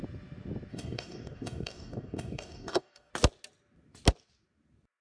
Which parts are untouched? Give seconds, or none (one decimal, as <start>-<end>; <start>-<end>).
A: 0.0-0.7; 3.1-5.0